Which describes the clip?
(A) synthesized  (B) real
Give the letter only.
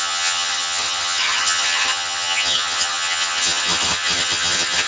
A